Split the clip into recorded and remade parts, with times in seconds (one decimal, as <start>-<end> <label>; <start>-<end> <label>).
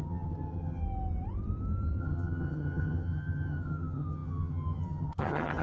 0.0-0.8 remade; 0.8-2.0 recorded; 2.0-5.6 remade